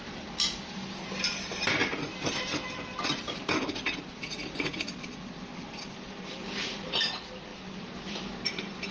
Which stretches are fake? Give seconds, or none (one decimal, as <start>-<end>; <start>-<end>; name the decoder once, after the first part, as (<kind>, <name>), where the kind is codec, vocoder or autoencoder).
none